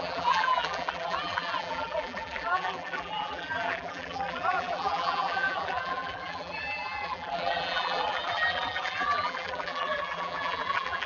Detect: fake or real fake